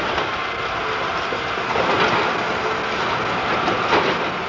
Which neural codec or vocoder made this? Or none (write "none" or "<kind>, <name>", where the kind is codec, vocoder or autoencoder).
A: none